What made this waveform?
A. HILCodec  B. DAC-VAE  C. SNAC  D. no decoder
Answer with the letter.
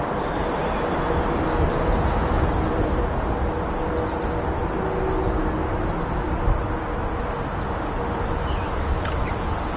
D